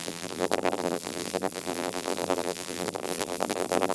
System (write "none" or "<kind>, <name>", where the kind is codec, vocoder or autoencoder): vocoder, BigVGAN v2